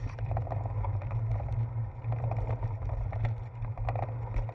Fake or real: real